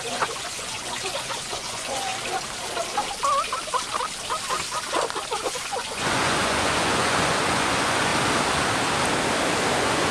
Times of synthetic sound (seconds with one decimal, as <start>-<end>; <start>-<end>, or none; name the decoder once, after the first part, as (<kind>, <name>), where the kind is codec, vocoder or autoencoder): 0.0-2.1 (vocoder, Vocos); 5.3-8.1; 9.7-10.1